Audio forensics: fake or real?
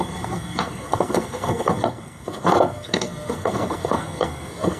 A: fake